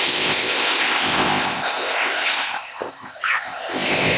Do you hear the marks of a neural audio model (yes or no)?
yes